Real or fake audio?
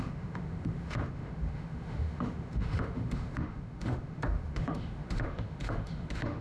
fake